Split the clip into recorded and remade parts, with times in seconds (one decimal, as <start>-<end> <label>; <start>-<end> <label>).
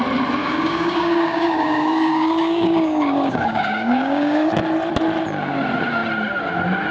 0.0-0.4 recorded; 0.4-4.5 remade; 4.5-6.9 recorded